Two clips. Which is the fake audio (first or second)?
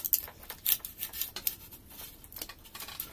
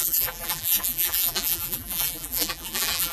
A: second